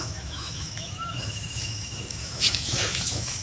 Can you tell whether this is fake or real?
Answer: fake